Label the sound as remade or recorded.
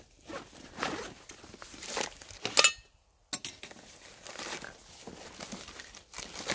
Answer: recorded